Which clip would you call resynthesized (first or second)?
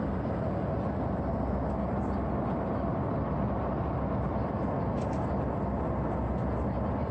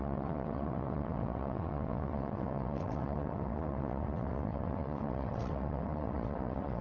second